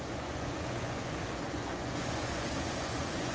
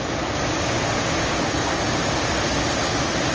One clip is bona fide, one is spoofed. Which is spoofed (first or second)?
first